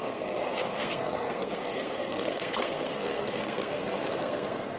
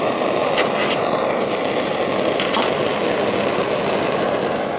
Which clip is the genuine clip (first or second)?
second